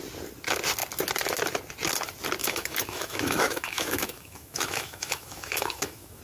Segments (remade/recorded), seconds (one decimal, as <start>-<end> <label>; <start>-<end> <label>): 0.0-2.4 recorded; 2.4-6.2 remade